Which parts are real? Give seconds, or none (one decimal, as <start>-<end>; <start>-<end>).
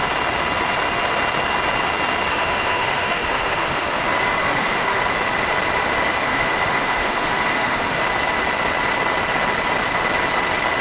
0.0-2.3; 4.0-4.4; 5.0-6.2; 8.0-10.8